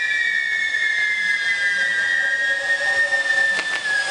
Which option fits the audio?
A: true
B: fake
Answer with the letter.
A